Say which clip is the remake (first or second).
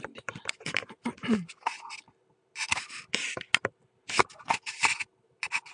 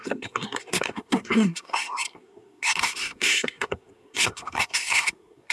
second